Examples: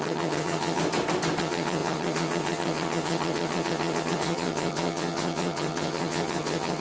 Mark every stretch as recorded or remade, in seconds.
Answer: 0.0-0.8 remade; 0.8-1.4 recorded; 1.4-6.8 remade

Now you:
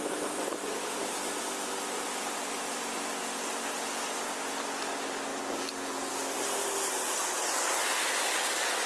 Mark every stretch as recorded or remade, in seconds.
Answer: 0.0-5.3 recorded; 5.3-6.1 remade; 6.1-8.9 recorded